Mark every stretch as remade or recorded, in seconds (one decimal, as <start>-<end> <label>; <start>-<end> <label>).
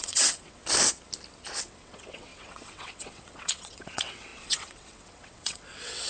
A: 0.0-0.6 remade; 0.6-1.6 recorded; 1.6-6.1 remade